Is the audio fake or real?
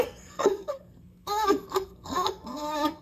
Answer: fake